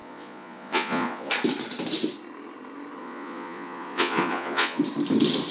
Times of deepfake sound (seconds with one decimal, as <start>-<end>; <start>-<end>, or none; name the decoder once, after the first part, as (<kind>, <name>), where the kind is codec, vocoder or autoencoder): 0.0-1.3 (vocoder, Vocos); 3.0-4.8